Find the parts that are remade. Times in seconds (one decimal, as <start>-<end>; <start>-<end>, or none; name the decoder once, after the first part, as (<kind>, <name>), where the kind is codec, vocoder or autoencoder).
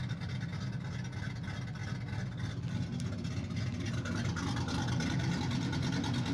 none